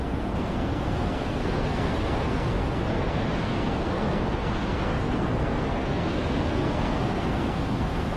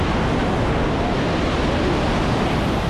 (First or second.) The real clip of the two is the second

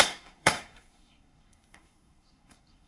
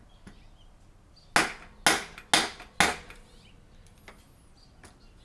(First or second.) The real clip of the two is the second